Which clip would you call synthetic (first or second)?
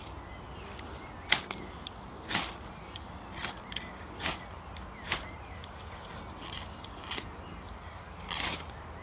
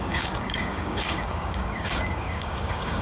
second